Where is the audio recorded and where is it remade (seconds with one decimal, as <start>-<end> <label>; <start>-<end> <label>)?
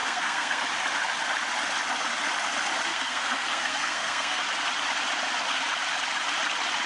0.0-0.6 remade; 0.6-2.9 recorded; 2.9-4.4 remade; 4.4-6.9 recorded